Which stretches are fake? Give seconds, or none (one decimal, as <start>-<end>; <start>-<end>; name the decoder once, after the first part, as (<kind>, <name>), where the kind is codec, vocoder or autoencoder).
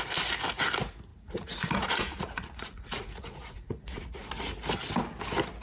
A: 1.1-4.4 (vocoder, Vocos)